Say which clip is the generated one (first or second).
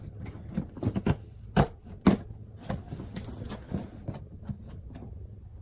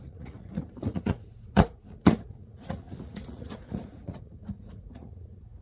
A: second